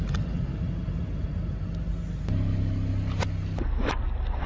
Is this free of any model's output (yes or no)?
yes